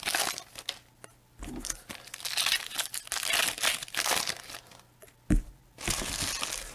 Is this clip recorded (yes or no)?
yes